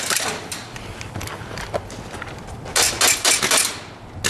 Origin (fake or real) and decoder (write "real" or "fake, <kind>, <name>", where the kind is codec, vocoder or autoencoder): real